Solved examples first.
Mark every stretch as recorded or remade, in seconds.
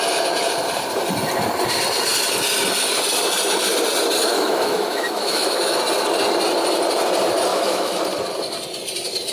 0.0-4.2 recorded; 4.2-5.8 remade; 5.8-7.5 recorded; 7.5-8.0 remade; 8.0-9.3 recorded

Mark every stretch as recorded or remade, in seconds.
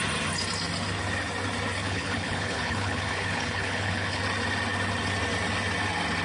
0.0-1.8 recorded; 1.8-4.2 remade; 4.2-6.2 recorded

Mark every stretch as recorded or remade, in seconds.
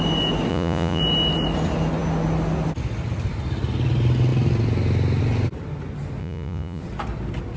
0.0-0.5 recorded; 0.5-1.0 remade; 1.0-6.2 recorded; 6.2-6.8 remade; 6.8-7.6 recorded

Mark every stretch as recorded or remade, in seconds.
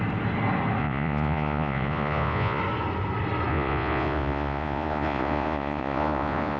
0.0-0.8 recorded; 0.8-2.6 remade; 2.6-3.5 recorded; 3.5-6.6 remade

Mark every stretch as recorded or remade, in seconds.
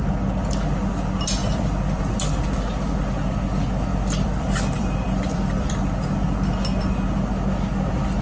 0.0-1.4 recorded; 1.4-2.0 remade; 2.0-3.9 recorded; 3.9-5.7 remade; 5.7-8.2 recorded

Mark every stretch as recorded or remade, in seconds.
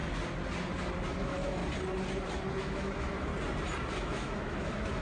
0.0-1.2 recorded; 1.2-1.6 remade; 1.6-2.6 recorded; 2.6-3.3 remade; 3.3-3.9 recorded; 3.9-5.0 remade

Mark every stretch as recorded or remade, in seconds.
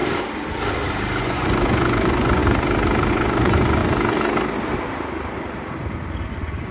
0.0-1.2 recorded; 1.2-2.4 remade; 2.4-3.1 recorded; 3.1-3.8 remade; 3.8-6.3 recorded; 6.3-6.7 remade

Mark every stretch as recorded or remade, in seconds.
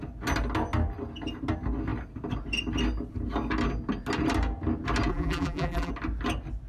0.0-5.1 recorded; 5.1-5.9 remade; 5.9-6.7 recorded